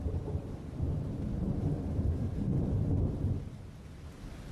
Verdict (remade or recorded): recorded